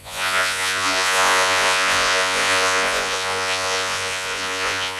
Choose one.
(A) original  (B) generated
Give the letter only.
B